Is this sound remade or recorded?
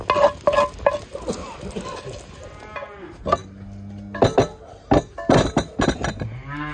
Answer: recorded